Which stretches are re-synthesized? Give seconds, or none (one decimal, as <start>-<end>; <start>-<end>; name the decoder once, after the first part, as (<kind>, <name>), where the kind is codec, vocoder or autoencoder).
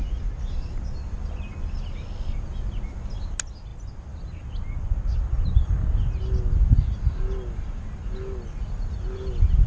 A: none